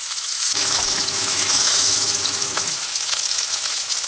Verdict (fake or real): fake